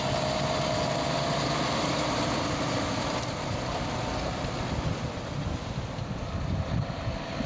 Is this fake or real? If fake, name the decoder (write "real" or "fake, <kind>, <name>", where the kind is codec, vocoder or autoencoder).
real